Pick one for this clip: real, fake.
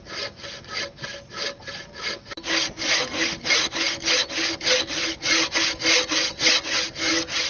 real